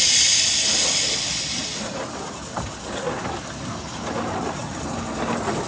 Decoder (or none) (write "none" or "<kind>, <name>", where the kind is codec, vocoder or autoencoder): none